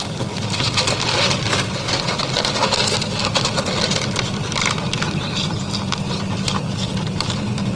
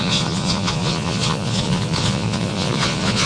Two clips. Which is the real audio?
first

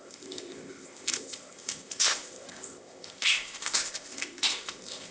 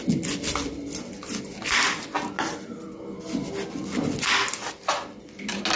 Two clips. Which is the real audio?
second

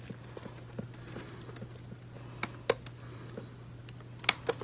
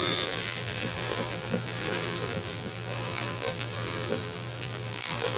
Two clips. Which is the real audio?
first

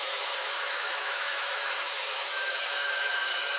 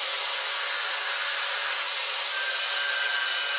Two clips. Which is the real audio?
second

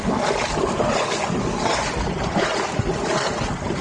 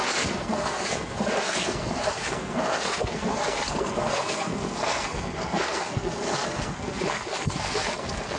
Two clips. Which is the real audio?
first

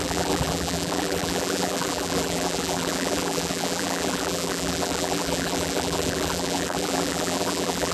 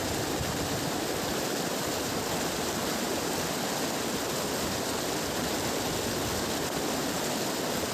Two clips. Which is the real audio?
second